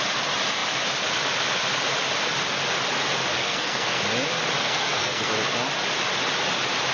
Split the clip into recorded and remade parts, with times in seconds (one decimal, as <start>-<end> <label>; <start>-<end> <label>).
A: 0.0-3.4 recorded; 3.4-4.0 remade; 4.0-4.6 recorded; 4.6-5.3 remade; 5.3-6.9 recorded